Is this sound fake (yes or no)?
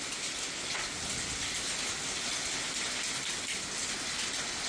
no